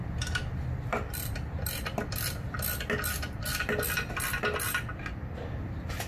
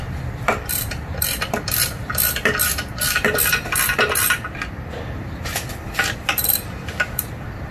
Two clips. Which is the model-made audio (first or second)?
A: second